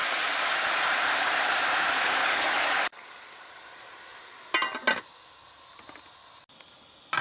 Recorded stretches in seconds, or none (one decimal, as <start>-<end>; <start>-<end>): 0.0-2.2; 3.5-7.2